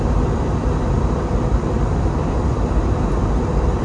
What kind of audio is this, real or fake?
real